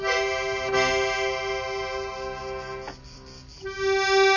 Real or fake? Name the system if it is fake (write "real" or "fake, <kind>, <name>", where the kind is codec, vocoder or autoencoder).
real